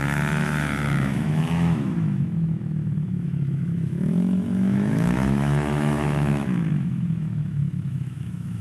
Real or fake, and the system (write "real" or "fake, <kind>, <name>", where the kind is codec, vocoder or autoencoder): fake, autoencoder, DAC-VAE